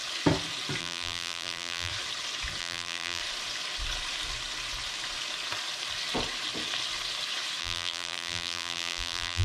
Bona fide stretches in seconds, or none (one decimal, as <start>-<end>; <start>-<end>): 0.0-0.8; 1.9-2.6; 3.2-7.6